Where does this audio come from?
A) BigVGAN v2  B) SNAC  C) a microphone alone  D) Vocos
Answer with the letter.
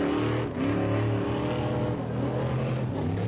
C